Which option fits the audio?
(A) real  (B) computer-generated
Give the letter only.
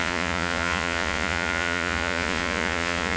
B